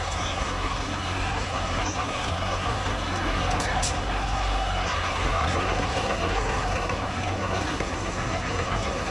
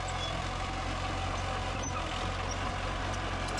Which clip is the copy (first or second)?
first